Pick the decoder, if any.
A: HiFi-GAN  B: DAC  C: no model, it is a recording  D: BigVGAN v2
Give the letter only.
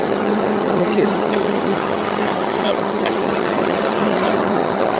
A